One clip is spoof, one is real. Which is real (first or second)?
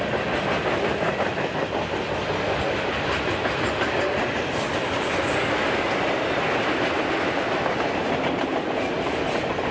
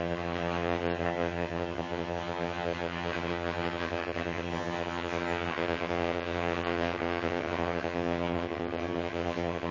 first